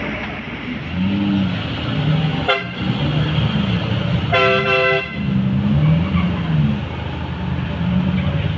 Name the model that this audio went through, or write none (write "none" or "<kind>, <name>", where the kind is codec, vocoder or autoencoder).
none